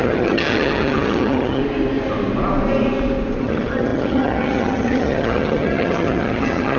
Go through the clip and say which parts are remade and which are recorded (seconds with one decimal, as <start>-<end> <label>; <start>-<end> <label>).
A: 0.0-1.6 remade; 1.6-3.4 recorded; 3.4-6.8 remade